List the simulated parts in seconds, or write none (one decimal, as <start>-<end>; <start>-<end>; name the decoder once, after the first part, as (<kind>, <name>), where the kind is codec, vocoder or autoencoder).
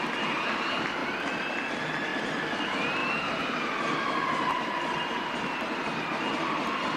0.0-2.1 (vocoder, BigVGAN v2); 2.6-3.0; 6.3-7.0